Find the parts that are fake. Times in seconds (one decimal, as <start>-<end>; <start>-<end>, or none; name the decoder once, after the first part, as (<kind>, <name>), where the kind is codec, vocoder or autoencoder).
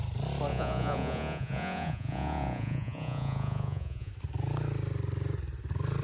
0.5-4.1 (vocoder, Vocos)